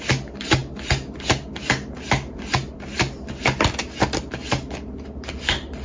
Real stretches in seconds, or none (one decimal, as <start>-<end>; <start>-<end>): 0.0-5.8